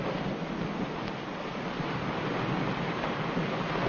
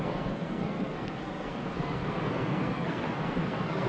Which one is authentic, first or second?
first